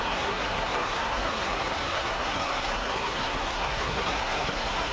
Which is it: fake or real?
fake